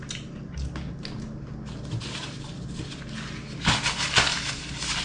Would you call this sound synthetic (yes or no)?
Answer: no